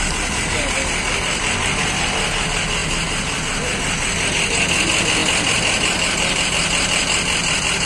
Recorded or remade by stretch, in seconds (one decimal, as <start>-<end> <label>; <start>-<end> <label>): 0.0-5.2 recorded; 5.2-6.4 remade; 6.4-7.9 recorded

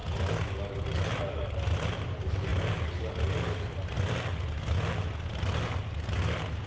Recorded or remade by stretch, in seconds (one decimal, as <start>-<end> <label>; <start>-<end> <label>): 0.0-6.7 recorded